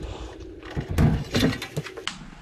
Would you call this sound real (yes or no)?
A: yes